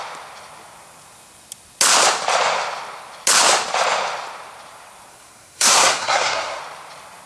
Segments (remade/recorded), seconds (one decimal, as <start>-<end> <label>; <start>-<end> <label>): 0.0-5.1 recorded; 5.1-6.6 remade; 6.6-7.3 recorded